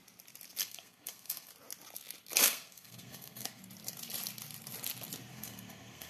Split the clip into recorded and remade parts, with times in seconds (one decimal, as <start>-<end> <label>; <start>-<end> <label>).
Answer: 0.0-0.6 recorded; 0.6-1.5 remade; 1.5-2.4 recorded; 2.4-3.6 remade; 3.6-5.3 recorded; 5.3-6.1 remade